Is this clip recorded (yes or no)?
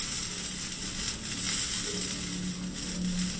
yes